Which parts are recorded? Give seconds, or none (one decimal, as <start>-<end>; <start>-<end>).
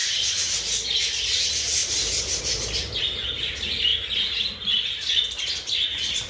0.0-1.8; 2.4-6.3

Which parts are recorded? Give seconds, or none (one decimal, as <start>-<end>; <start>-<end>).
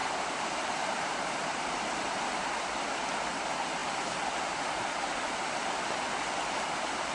2.3-7.1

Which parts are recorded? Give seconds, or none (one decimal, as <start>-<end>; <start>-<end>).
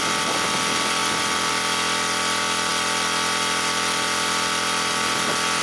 0.0-5.6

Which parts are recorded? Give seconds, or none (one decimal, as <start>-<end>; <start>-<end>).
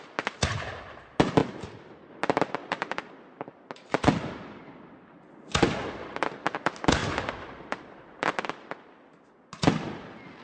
0.0-2.6; 3.6-7.0; 8.3-10.4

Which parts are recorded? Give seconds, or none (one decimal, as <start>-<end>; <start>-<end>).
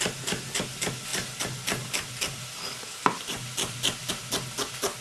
0.0-5.0